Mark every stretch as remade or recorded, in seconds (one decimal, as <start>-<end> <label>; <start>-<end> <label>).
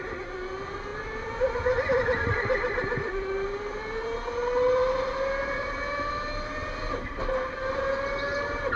0.0-0.9 recorded; 0.9-3.8 remade; 3.8-8.8 recorded